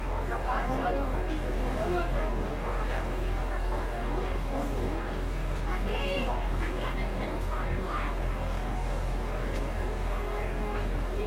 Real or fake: fake